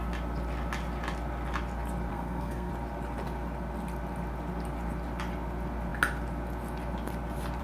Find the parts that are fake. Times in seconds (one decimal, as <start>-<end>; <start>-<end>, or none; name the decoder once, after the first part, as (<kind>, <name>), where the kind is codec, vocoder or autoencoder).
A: 2.1-2.7 (codec, SNAC)